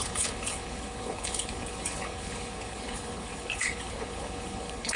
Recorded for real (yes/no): no